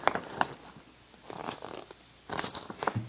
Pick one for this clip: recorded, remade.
recorded